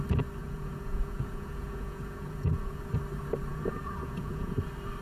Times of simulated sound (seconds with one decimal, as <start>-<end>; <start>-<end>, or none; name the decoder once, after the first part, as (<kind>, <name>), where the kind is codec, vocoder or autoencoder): 0.4-2.8 (vocoder, Vocos); 3.5-4.6